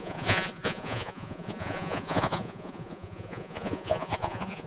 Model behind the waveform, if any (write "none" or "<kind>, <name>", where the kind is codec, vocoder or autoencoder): vocoder, Vocos